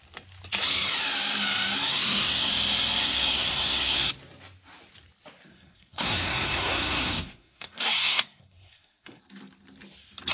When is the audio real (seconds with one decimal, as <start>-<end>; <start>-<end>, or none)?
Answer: 0.0-1.9; 2.5-3.0; 4.1-5.5; 9.2-10.3